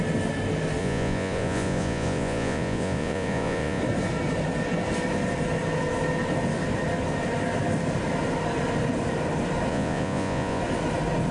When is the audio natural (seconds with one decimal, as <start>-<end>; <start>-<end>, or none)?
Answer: 0.0-0.8; 3.8-9.7; 10.6-11.3